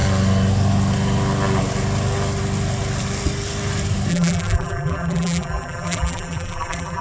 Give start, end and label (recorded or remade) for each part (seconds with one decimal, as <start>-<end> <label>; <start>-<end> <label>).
0.0-4.1 recorded; 4.1-7.0 remade

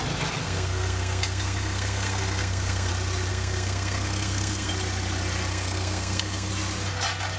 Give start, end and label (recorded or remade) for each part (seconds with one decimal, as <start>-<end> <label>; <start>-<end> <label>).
0.0-0.4 recorded; 0.4-2.9 remade; 2.9-3.3 recorded; 3.3-4.7 remade; 4.7-5.5 recorded; 5.5-6.5 remade; 6.5-7.4 recorded

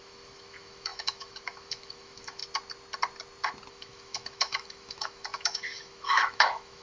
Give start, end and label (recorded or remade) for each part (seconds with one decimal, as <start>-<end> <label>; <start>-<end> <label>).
0.0-2.4 remade; 2.4-3.7 recorded; 3.7-6.8 remade

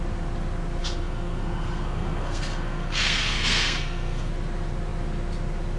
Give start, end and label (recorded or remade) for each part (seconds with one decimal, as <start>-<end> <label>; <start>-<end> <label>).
0.0-0.8 recorded; 0.8-4.3 remade; 4.3-5.8 recorded